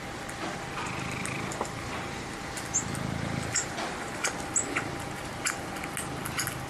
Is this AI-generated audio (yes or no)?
no